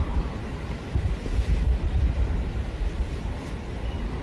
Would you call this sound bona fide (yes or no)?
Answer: yes